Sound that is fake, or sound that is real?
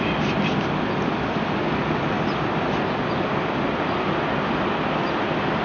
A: real